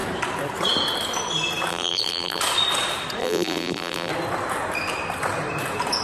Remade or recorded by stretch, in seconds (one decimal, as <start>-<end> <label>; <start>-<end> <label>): 0.0-1.7 recorded; 1.7-2.4 remade; 2.4-3.2 recorded; 3.2-4.1 remade; 4.1-6.0 recorded